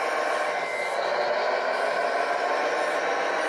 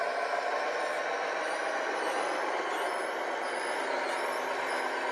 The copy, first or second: second